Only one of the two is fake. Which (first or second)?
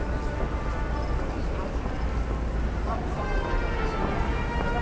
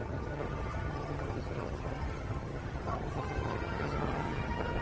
second